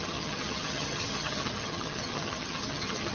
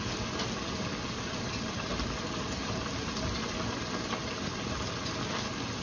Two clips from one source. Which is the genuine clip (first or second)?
second